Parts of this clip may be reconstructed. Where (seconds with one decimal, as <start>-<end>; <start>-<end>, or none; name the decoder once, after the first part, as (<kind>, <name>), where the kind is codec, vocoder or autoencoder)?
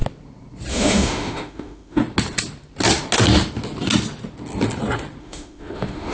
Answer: 0.7-2.0 (autoencoder, DAC-VAE); 5.2-6.1